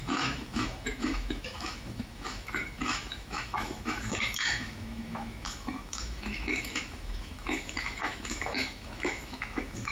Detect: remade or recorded remade